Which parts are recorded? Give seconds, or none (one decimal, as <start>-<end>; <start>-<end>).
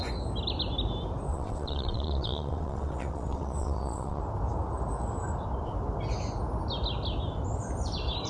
0.0-1.3; 4.2-8.3